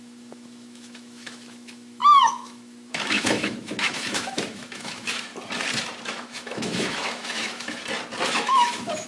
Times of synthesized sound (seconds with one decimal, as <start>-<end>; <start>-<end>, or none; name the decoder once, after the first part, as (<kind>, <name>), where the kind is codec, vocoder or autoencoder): 0.0-5.3 (autoencoder, DAC-VAE); 6.2-7.8; 8.3-9.1

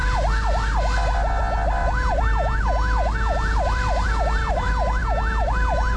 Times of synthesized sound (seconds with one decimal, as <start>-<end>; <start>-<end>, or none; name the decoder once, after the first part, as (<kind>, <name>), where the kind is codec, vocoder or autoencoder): 1.8-2.3 (vocoder, BigVGAN v2)

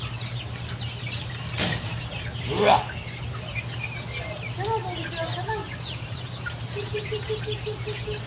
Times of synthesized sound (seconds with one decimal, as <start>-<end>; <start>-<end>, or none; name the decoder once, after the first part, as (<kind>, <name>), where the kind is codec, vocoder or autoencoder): 5.6-7.2 (vocoder, BigVGAN v2)